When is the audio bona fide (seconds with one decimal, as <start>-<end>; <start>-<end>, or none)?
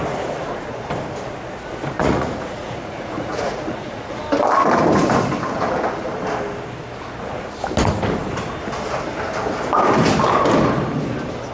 0.0-2.0; 4.2-11.5